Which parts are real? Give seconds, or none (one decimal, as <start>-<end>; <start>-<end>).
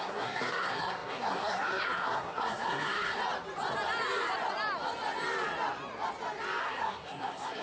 3.2-6.6